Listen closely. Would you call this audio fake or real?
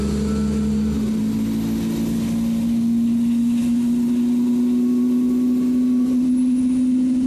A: real